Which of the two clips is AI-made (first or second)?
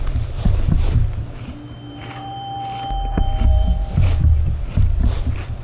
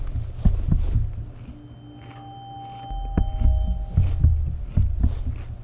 first